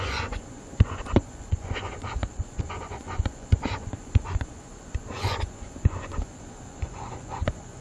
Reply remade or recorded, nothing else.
remade